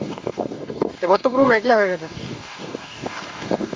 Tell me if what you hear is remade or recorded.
remade